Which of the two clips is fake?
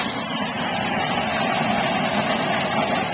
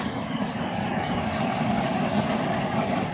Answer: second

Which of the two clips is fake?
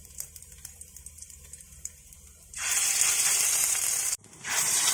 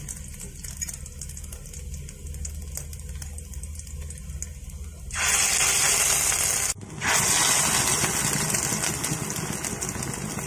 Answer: first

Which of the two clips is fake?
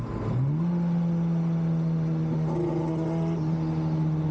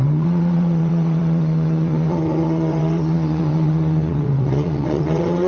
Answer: second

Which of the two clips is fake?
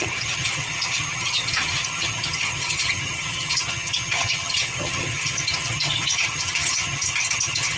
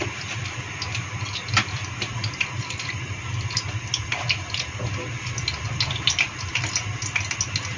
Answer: first